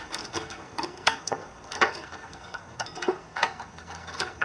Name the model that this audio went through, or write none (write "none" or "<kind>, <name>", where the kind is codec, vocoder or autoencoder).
codec, SNAC